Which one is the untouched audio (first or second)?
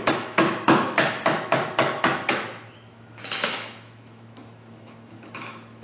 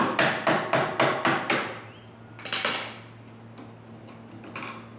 second